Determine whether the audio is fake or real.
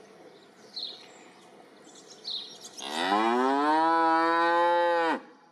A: real